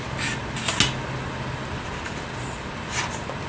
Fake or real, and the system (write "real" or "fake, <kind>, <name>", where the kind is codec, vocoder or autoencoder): real